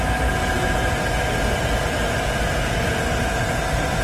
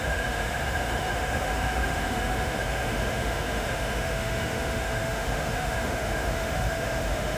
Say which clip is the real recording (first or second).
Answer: first